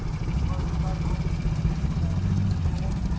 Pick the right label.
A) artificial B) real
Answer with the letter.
B